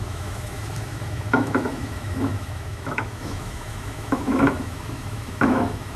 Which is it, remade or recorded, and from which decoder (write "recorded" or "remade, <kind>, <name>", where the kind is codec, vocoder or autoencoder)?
remade, autoencoder, DAC-VAE